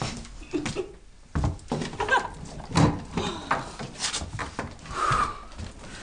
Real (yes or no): yes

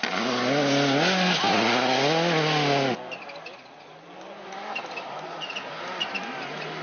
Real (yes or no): yes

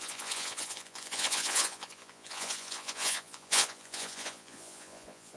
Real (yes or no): no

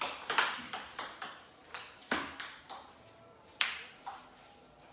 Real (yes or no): yes